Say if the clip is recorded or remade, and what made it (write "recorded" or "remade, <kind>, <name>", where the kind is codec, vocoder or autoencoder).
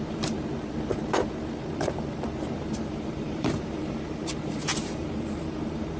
remade, vocoder, BigVGAN v2